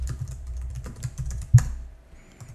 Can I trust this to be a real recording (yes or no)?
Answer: no